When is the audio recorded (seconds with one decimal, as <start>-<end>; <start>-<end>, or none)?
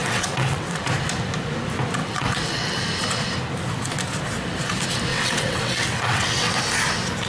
0.9-2.0; 2.8-5.1; 6.5-7.3